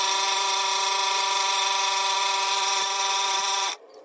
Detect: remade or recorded remade